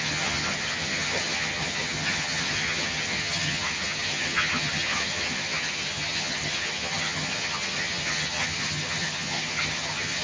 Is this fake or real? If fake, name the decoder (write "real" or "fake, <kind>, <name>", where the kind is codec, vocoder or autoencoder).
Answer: fake, vocoder, HiFi-GAN